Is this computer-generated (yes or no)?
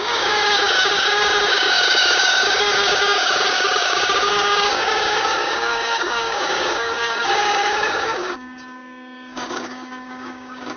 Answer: yes